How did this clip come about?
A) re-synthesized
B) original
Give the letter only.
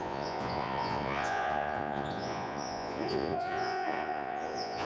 A